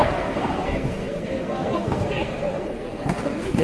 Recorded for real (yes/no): no